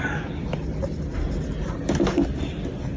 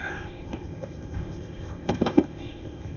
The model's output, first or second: second